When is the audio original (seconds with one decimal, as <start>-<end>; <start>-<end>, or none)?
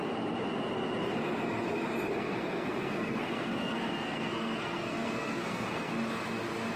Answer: 0.0-2.1; 5.9-6.8